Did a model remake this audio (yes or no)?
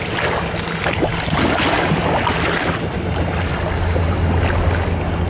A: no